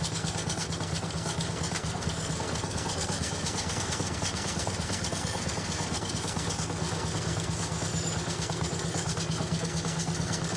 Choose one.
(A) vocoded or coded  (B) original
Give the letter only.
A